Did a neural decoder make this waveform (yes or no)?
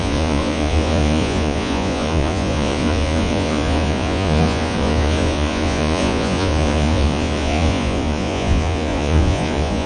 yes